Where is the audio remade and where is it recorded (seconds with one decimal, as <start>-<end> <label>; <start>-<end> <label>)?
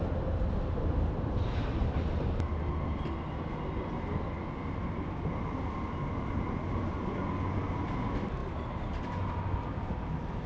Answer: 0.0-10.5 recorded